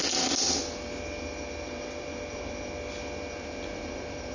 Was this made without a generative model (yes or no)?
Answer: yes